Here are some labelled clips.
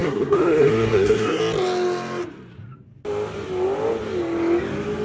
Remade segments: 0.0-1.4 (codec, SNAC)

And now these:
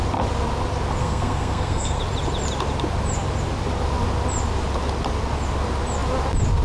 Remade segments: 1.0-2.0 (codec, SNAC)

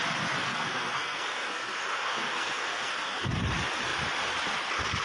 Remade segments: 0.4-3.4 (codec, SNAC)